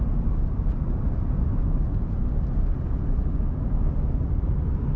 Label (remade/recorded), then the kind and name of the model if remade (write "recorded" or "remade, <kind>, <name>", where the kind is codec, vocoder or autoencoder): recorded